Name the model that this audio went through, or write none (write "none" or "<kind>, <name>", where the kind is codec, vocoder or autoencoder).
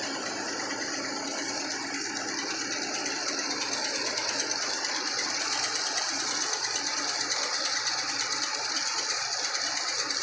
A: none